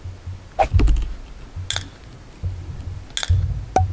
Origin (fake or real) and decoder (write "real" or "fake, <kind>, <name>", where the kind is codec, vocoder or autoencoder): real